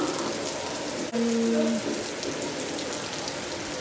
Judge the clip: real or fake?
real